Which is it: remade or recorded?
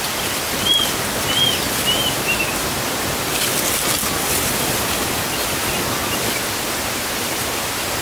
recorded